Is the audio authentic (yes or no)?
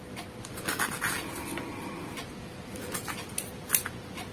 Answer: yes